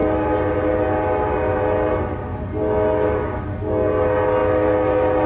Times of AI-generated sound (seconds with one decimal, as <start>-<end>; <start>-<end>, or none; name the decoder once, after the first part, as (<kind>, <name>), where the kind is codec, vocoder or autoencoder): none